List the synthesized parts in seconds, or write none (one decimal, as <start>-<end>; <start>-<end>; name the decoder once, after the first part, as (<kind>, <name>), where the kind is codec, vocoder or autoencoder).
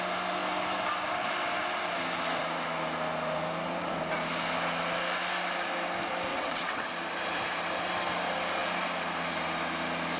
6.3-6.9 (vocoder, WaveNeXt)